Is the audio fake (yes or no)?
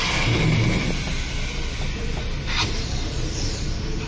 no